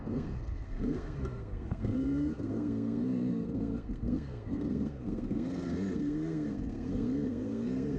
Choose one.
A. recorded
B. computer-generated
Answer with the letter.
B